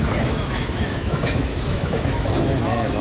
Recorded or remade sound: remade